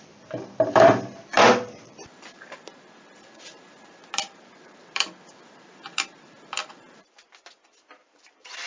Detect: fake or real fake